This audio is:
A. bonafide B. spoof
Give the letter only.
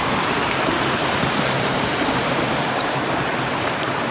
B